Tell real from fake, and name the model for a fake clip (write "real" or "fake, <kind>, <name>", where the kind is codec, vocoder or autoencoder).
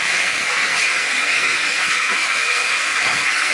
fake, codec, SNAC